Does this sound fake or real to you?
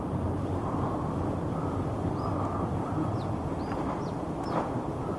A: fake